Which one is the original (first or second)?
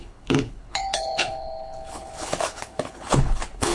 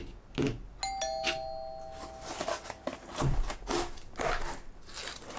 second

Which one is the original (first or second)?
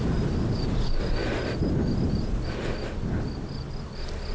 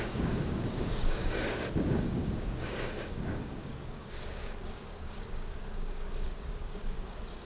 first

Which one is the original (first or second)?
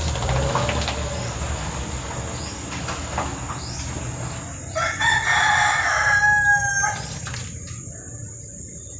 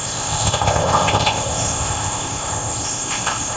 first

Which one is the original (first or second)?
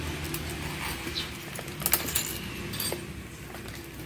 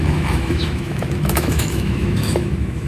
first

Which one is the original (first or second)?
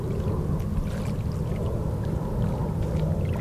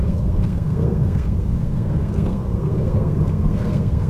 first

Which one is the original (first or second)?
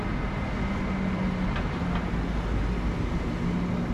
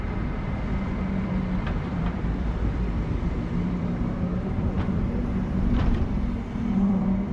first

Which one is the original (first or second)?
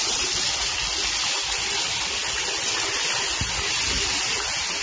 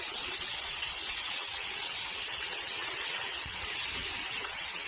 first